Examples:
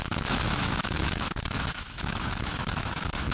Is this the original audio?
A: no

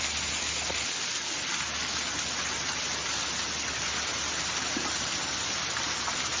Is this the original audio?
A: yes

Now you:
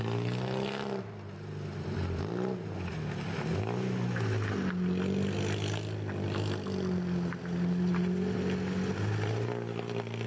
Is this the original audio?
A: yes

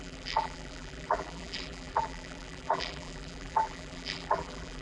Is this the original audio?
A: no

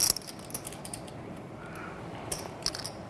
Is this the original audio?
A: yes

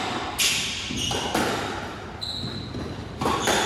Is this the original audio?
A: yes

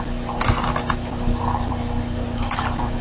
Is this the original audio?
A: yes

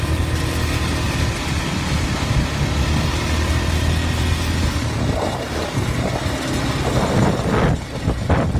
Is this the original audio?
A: yes